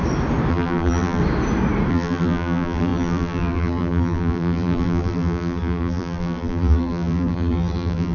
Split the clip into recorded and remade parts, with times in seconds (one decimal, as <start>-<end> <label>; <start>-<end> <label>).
0.0-0.5 recorded; 0.5-1.2 remade; 1.2-1.9 recorded; 1.9-8.1 remade